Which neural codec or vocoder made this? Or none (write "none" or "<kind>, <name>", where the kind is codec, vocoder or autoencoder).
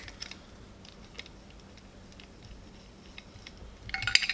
none